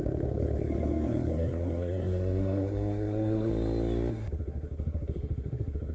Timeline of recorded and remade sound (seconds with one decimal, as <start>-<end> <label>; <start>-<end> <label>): 0.0-3.5 remade; 3.5-4.1 recorded; 4.1-5.9 remade